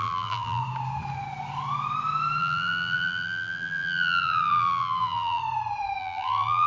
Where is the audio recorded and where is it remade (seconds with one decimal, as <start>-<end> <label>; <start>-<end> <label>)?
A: 0.0-0.6 remade; 0.6-2.4 recorded; 2.4-5.4 remade; 5.4-6.0 recorded; 6.0-6.7 remade